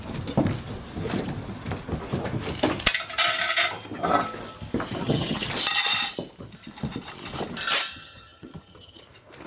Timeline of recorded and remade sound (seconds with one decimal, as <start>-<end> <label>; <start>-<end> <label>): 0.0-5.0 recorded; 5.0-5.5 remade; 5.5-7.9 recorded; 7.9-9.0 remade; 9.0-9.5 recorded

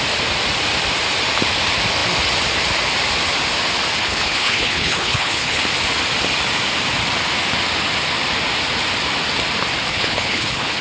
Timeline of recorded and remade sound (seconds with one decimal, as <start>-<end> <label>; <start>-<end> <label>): 0.0-4.0 recorded; 4.0-5.6 remade; 5.6-9.9 recorded; 9.9-10.8 remade

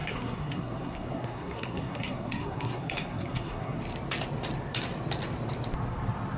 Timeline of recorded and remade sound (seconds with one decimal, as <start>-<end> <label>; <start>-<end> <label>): 0.0-3.8 remade; 3.8-6.4 recorded

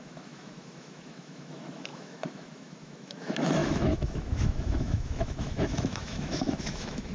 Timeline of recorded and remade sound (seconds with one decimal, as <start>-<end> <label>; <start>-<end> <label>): 0.0-7.1 remade

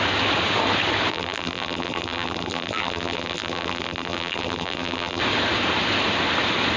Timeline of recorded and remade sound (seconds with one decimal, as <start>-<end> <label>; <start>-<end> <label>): 0.0-1.1 recorded; 1.1-5.2 remade; 5.2-6.8 recorded